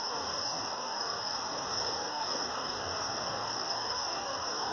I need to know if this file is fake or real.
fake